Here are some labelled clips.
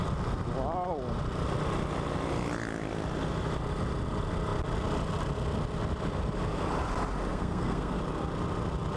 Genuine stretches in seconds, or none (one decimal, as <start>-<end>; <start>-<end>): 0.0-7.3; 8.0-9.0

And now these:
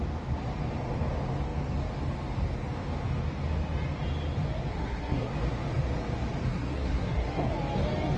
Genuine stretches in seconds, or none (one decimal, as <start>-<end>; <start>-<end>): 0.0-4.7; 5.3-6.5; 7.5-8.2

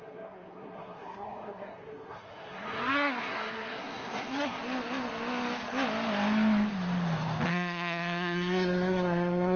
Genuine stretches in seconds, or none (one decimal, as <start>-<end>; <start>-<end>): 4.6-7.5

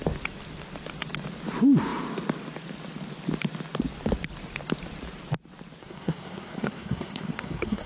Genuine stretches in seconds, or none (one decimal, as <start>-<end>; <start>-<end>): 0.0-5.8